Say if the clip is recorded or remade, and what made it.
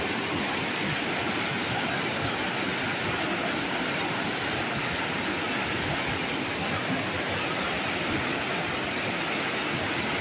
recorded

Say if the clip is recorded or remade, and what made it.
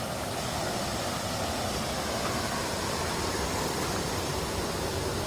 recorded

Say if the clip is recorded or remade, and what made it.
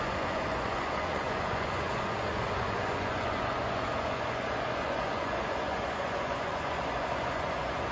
remade, vocoder, Vocos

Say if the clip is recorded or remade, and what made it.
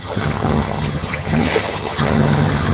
remade, vocoder, HiFi-GAN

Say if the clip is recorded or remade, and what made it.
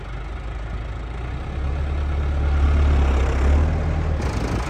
recorded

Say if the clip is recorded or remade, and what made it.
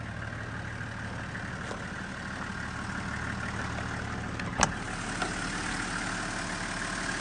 recorded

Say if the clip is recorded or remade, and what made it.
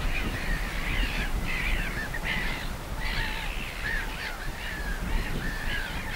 remade, vocoder, BigVGAN v2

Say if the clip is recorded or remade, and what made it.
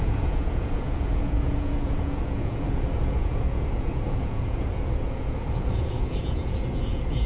remade, vocoder, Vocos